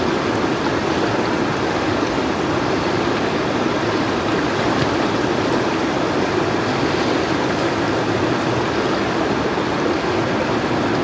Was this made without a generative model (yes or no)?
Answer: yes